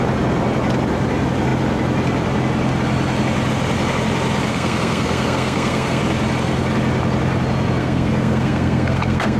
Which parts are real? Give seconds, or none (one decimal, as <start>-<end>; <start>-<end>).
0.0-4.5; 6.0-7.8